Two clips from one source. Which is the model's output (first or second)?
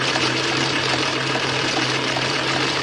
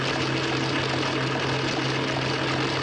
first